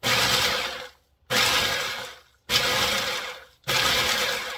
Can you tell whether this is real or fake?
real